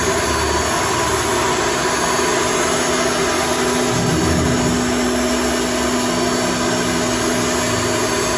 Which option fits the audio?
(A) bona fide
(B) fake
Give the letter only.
A